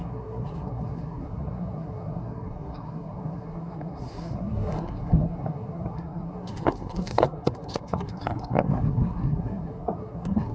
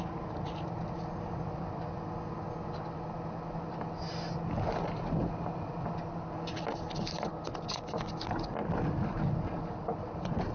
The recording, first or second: second